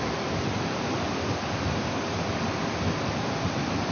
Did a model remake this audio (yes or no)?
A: no